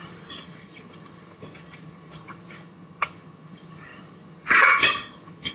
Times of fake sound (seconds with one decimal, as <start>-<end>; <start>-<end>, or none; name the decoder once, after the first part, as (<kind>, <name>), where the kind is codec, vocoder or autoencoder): 0.0-5.5 (vocoder, HiFi-GAN)